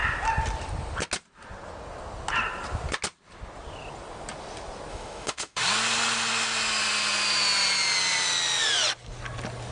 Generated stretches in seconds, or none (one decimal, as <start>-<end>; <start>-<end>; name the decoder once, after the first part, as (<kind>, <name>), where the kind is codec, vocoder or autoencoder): 4.9-5.6 (autoencoder, DAC-VAE)